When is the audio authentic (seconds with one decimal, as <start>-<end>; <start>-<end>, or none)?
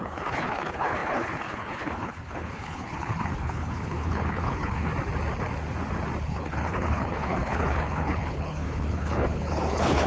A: 4.9-6.2